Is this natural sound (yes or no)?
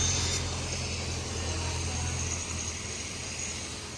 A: yes